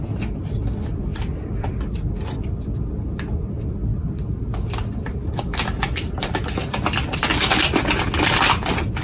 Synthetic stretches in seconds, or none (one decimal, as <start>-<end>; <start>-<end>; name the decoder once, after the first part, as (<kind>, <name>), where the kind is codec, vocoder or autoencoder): none